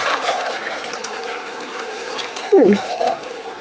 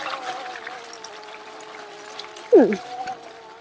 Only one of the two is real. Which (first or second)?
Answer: second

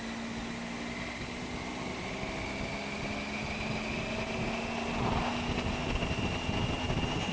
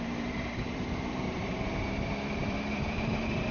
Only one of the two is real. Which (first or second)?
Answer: first